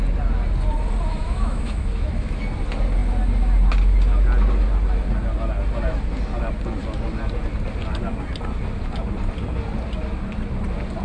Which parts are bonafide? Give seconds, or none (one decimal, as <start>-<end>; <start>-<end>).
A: 0.0-1.1; 2.4-11.0